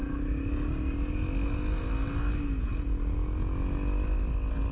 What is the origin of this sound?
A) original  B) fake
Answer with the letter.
A